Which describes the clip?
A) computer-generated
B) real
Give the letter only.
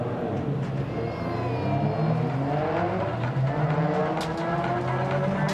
B